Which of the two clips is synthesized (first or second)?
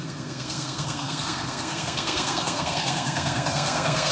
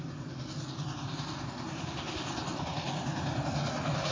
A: first